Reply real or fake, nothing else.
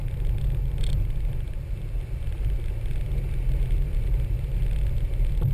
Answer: real